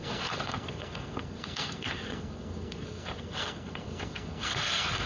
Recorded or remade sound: remade